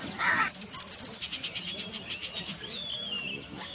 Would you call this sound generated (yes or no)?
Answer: no